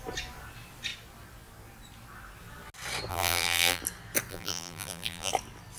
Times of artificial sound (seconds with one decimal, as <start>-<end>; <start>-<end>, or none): 3.1-3.8; 4.3-5.3